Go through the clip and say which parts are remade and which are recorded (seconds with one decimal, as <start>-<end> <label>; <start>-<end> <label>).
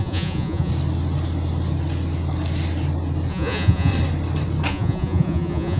0.0-0.7 remade; 0.7-3.3 recorded; 3.3-3.9 remade; 3.9-4.7 recorded; 4.7-5.8 remade